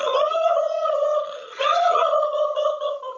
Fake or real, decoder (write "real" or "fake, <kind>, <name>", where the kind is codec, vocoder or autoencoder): fake, vocoder, HiFi-GAN